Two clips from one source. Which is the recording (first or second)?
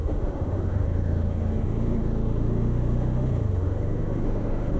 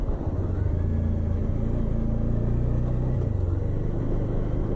second